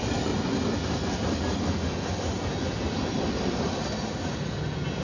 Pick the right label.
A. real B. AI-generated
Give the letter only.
A